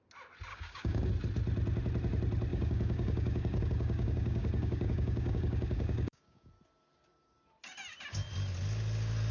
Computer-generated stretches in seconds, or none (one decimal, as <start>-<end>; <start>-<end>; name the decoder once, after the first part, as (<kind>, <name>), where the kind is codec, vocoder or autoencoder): 0.5-1.1 (codec, DAC); 2.5-6.5

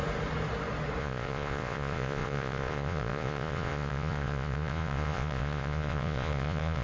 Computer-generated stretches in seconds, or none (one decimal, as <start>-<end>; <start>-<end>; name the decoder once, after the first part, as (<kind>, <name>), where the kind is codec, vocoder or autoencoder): 1.0-6.8 (vocoder, Vocos)

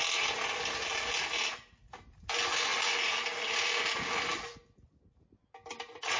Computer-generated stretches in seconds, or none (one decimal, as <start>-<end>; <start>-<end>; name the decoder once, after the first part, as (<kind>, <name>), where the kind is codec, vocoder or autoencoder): none

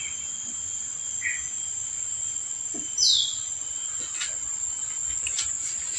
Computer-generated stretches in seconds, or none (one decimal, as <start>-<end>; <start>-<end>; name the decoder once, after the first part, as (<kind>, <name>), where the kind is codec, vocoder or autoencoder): none

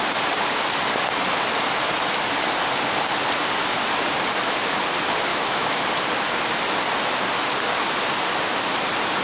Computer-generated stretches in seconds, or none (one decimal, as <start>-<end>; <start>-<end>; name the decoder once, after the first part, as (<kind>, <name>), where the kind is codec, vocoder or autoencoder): 5.3-5.8 (autoencoder, DAC-VAE)